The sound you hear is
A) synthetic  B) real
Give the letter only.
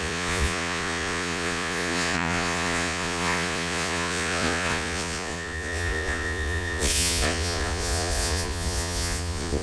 A